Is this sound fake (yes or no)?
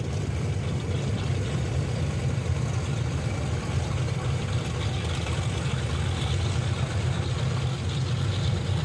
yes